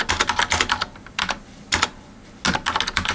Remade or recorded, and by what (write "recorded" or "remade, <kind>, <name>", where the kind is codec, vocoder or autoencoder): recorded